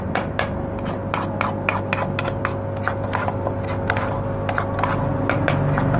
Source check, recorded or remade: recorded